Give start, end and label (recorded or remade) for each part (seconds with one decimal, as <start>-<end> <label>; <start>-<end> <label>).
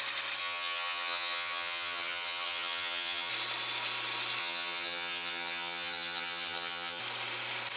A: 0.0-0.4 recorded; 0.4-3.3 remade; 3.3-4.4 recorded; 4.4-7.0 remade; 7.0-7.8 recorded